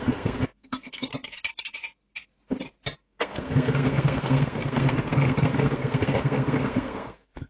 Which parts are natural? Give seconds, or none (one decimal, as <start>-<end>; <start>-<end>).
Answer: 1.1-3.0